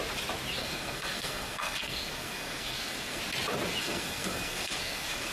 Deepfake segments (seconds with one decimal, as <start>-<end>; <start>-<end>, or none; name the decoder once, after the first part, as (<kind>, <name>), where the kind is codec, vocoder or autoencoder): 0.6-3.2 (codec, SNAC); 3.8-5.3